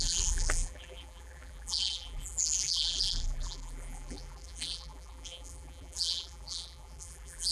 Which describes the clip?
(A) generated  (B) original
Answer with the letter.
A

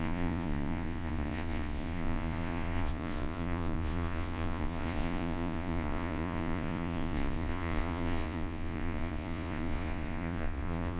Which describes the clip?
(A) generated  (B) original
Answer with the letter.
A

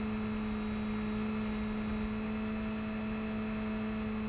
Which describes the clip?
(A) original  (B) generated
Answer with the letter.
A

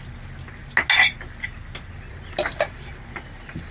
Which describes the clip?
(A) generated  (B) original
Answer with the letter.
B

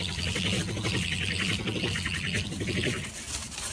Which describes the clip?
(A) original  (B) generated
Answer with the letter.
A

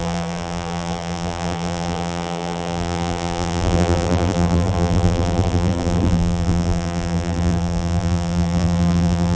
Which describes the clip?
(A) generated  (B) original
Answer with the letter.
A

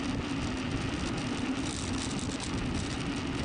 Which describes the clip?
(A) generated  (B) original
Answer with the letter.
B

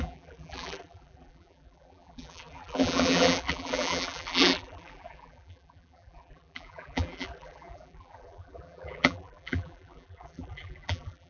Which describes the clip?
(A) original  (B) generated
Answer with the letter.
B